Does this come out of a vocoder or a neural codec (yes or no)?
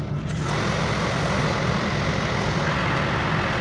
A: no